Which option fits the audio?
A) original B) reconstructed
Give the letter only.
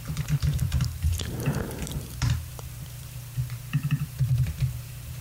B